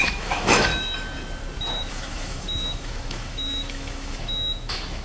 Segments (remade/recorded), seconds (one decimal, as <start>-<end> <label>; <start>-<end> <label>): 0.0-0.7 remade; 0.7-1.7 recorded; 1.7-5.0 remade